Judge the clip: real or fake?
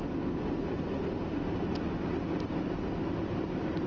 real